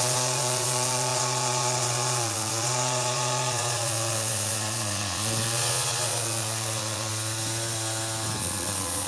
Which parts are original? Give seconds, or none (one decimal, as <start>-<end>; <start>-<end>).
7.1-8.4